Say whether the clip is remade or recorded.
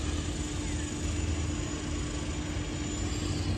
recorded